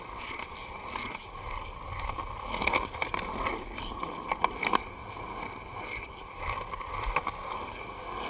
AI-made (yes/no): no